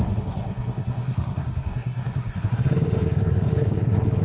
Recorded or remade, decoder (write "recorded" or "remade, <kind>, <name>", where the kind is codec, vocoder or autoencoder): remade, codec, SNAC